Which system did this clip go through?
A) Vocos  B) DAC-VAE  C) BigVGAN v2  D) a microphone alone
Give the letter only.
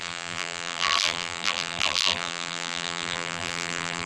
C